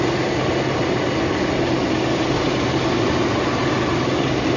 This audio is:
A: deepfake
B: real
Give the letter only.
B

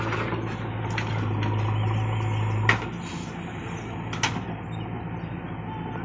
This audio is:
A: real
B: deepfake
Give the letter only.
A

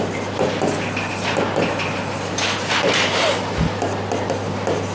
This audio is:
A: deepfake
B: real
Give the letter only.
B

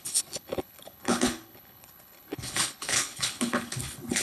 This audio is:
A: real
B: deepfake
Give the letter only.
B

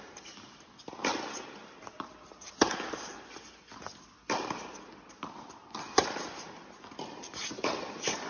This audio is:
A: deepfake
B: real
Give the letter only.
B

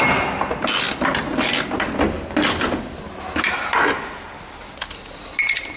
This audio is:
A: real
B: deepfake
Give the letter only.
A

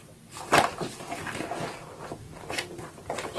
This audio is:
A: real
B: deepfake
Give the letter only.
A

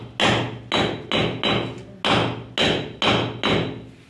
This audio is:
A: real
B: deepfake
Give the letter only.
A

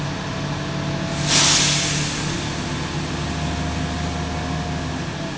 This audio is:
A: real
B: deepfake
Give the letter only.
A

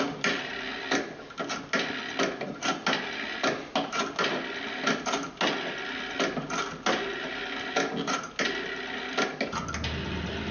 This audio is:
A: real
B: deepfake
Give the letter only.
A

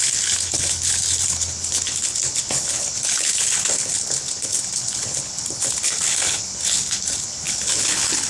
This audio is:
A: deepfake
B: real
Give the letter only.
A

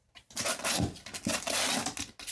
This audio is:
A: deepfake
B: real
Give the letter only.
B